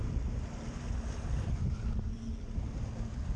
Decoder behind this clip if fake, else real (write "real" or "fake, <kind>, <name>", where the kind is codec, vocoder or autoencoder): real